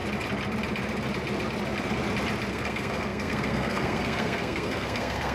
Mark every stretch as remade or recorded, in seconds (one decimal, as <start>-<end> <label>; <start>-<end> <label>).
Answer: 0.0-2.5 recorded; 2.5-5.3 remade

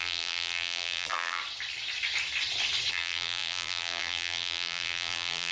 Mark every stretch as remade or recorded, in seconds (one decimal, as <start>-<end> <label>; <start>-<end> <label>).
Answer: 0.0-1.4 remade; 1.4-2.9 recorded; 2.9-5.5 remade